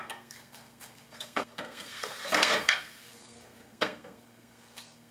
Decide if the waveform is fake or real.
fake